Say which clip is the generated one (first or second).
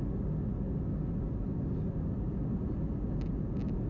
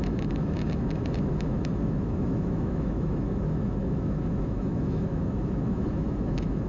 second